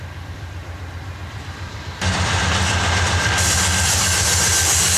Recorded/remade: remade